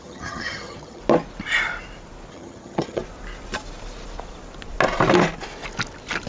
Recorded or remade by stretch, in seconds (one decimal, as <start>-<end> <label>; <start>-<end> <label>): 0.0-1.0 remade; 1.0-2.3 recorded; 2.3-3.0 remade; 3.0-6.3 recorded